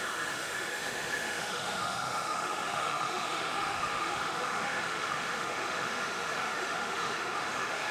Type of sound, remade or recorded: remade